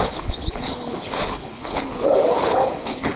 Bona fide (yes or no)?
no